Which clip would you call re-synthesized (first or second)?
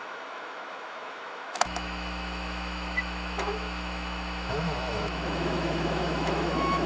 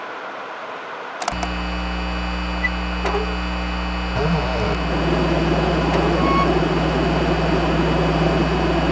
first